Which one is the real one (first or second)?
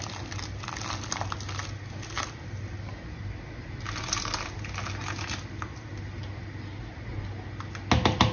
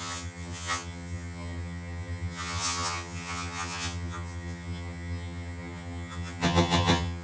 first